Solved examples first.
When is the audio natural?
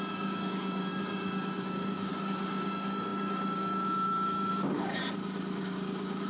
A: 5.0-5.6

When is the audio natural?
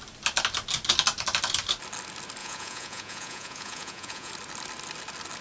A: 0.0-2.4; 4.3-5.4